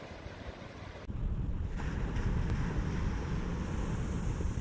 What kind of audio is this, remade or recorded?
recorded